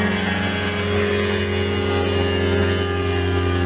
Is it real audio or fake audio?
real